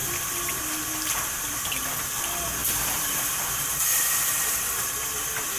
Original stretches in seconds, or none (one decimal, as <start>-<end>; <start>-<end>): 0.0-2.6; 4.0-5.6